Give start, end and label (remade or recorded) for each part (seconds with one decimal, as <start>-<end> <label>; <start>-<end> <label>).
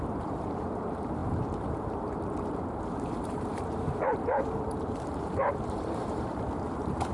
0.0-7.1 remade